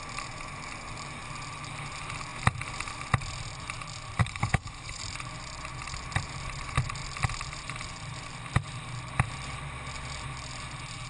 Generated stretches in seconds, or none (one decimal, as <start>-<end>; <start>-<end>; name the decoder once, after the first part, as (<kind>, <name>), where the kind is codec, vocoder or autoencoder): 4.2-5.0 (codec, HILCodec)